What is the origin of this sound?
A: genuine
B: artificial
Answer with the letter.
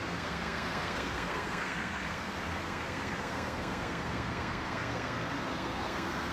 B